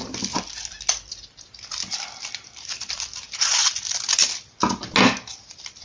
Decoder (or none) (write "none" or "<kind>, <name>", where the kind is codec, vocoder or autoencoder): none